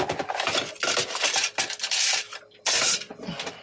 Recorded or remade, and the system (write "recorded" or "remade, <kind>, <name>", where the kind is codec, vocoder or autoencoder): recorded